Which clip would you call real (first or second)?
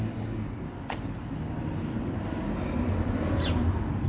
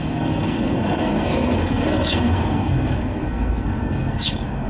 first